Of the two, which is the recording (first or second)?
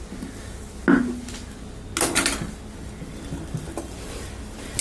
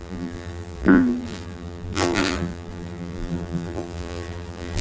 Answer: first